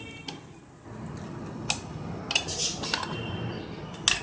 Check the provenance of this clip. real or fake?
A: real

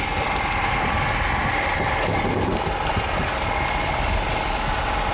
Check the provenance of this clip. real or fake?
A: real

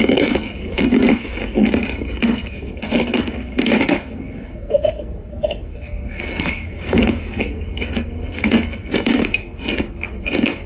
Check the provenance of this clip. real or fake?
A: fake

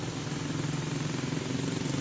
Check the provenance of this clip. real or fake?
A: real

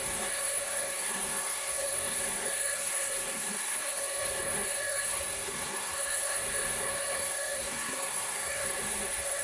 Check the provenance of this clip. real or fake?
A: fake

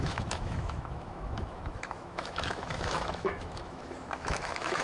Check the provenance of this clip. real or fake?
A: fake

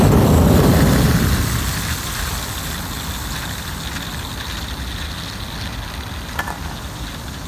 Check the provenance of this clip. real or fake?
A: real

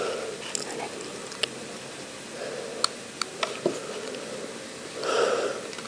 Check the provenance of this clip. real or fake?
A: real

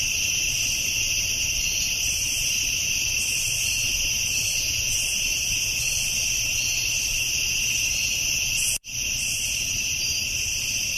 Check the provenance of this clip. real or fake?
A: fake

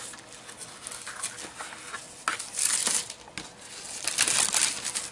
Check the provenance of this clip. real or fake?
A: real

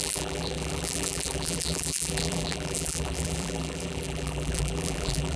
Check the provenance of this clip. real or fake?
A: fake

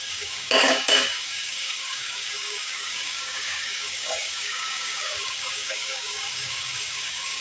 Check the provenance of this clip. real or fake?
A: fake